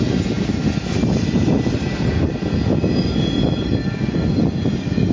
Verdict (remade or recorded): recorded